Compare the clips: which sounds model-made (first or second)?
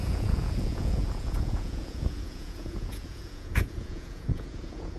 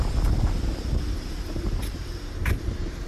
first